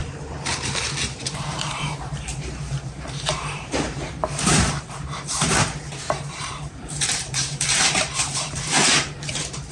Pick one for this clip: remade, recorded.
remade